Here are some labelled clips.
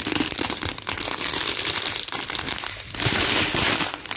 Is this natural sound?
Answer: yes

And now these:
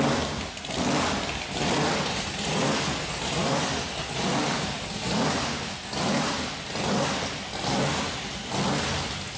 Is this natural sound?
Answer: yes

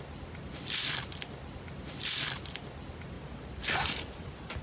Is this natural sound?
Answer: no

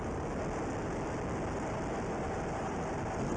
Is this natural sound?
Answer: yes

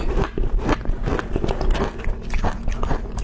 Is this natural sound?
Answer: yes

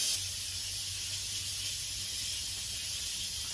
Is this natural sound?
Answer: yes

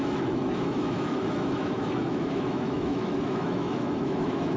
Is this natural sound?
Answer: no